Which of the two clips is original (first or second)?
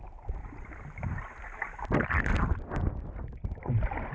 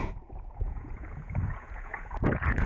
first